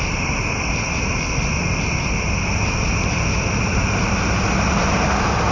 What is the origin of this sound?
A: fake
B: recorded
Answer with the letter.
B